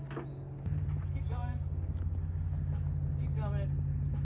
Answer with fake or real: real